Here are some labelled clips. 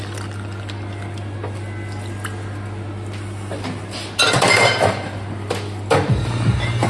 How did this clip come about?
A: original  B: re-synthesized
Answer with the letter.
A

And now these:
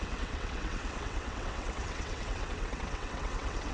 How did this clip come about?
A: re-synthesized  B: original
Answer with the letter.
A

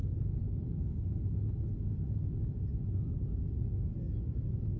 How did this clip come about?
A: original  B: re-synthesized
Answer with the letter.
A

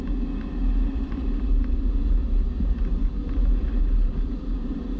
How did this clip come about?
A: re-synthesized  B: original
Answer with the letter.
B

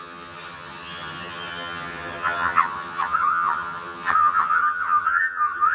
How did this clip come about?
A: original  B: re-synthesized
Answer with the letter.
B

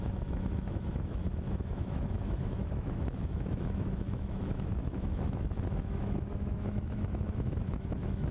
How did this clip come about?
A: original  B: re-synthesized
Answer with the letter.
B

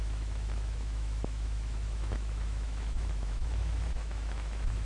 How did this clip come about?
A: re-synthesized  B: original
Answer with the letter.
A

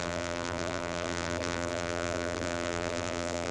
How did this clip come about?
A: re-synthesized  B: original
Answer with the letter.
A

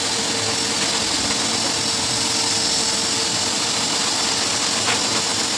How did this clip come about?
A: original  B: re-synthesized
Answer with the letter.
A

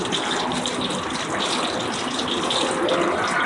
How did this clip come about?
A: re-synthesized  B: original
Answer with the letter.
B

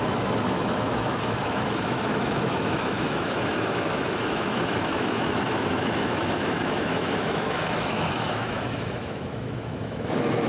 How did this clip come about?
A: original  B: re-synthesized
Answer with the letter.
B